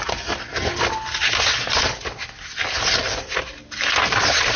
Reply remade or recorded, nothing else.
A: recorded